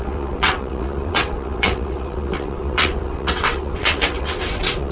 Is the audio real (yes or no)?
no